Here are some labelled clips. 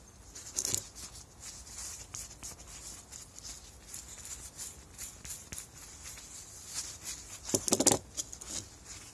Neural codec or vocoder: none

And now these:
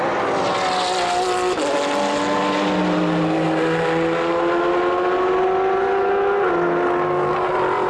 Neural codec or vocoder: none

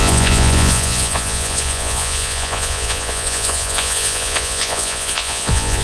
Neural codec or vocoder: vocoder, Vocos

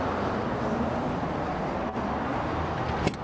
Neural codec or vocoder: none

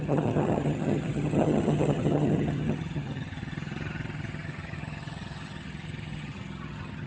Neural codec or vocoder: vocoder, HiFi-GAN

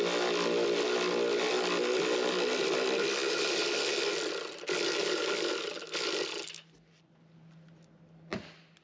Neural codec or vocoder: none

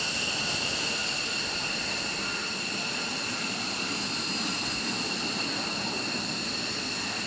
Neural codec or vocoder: none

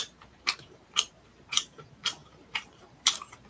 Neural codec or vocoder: vocoder, BigVGAN v2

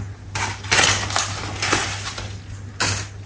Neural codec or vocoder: none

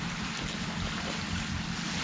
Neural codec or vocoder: none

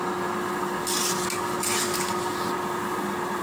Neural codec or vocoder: none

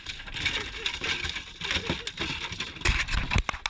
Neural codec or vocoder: none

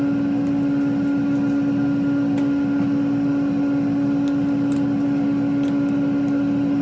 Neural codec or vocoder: none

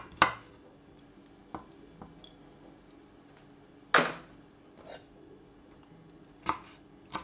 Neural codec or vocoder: none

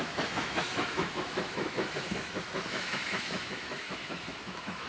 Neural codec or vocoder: autoencoder, DAC-VAE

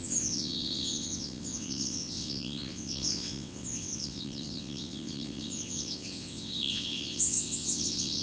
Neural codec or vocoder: vocoder, WaveNeXt